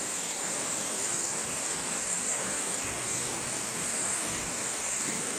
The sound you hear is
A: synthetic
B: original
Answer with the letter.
A